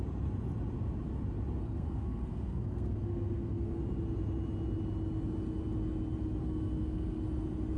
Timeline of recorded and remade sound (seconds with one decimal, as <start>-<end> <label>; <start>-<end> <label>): 0.0-1.6 recorded; 1.6-3.8 remade; 3.8-6.4 recorded; 6.4-7.2 remade; 7.2-7.8 recorded